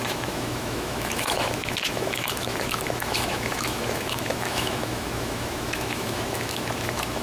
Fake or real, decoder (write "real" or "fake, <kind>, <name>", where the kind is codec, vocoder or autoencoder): fake, autoencoder, DAC-VAE